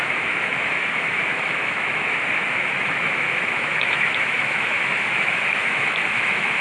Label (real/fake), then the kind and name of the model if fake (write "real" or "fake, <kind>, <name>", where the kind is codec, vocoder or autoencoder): fake, autoencoder, DAC-VAE